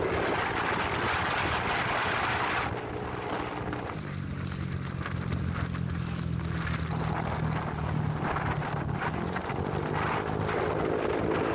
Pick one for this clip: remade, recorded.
recorded